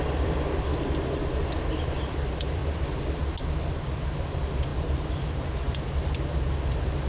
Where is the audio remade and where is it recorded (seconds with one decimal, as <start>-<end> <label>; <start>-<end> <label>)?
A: 0.0-1.2 remade; 1.2-1.7 recorded; 1.7-2.6 remade; 2.6-3.8 recorded; 3.8-7.1 remade